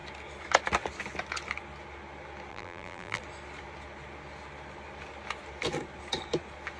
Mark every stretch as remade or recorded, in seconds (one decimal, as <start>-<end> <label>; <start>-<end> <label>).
0.0-2.5 recorded; 2.5-3.2 remade; 3.2-6.8 recorded